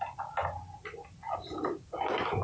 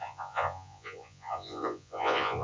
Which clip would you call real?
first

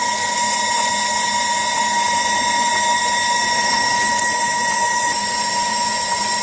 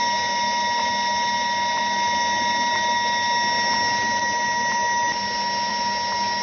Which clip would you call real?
second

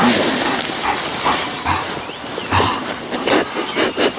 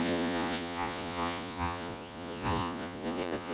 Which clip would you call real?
first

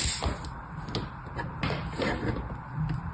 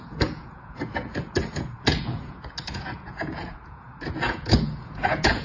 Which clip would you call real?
first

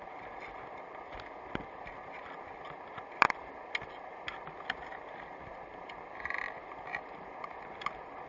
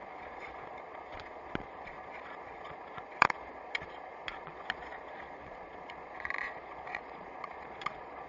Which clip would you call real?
first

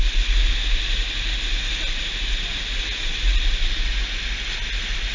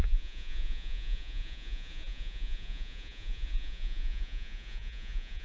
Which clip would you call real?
first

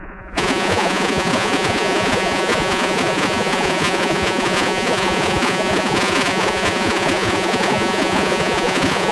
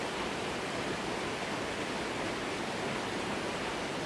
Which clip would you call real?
second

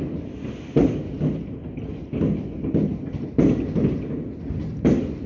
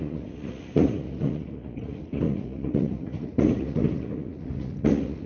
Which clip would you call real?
first